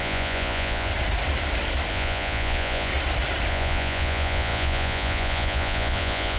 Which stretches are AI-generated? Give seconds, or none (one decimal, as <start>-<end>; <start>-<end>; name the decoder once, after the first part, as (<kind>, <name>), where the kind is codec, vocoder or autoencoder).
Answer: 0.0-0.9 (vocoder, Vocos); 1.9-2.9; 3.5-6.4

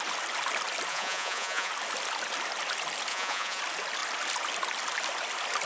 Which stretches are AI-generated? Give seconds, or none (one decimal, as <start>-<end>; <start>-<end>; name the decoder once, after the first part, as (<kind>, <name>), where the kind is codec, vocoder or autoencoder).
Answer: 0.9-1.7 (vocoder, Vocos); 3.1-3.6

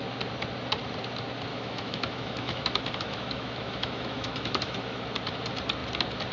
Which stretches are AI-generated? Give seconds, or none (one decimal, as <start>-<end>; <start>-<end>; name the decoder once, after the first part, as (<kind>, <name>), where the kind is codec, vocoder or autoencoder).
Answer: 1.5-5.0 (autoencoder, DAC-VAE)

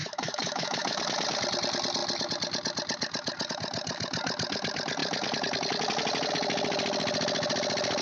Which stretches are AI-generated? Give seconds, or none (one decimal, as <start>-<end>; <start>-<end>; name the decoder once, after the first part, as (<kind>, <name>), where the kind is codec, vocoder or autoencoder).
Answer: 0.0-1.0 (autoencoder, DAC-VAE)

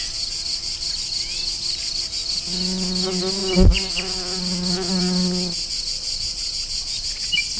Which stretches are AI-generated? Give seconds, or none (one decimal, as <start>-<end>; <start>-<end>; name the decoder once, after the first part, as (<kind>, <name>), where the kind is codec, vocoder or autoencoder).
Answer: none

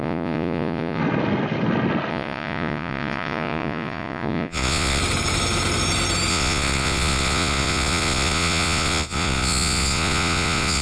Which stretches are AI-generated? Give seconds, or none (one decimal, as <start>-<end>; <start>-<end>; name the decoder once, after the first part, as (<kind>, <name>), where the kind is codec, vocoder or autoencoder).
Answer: 0.0-1.0 (vocoder, Vocos); 2.1-5.0; 6.3-10.8

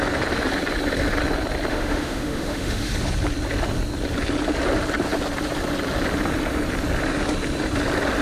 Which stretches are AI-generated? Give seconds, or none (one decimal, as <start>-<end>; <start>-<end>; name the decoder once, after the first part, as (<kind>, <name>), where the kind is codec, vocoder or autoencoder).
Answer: 1.7-2.9 (autoencoder, DAC-VAE)

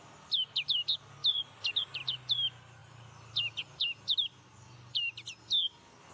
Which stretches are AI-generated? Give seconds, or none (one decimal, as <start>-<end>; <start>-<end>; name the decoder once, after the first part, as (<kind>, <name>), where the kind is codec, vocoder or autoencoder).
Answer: 1.2-1.7 (vocoder, BigVGAN v2)